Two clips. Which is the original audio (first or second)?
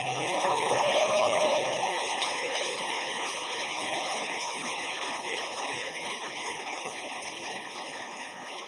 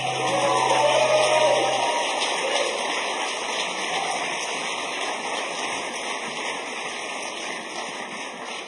second